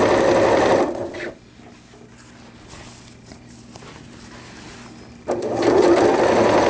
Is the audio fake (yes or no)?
no